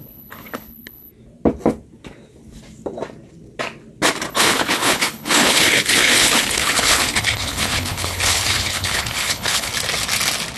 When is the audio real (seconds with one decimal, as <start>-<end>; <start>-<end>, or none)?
1.1-4.3; 9.7-10.6